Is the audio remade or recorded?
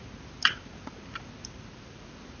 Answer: recorded